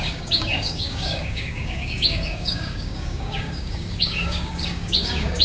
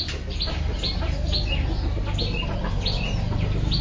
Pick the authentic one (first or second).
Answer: second